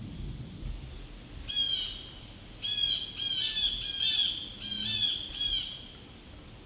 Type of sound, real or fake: real